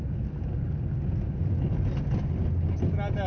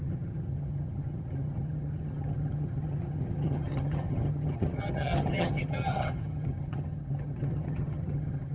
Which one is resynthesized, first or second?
second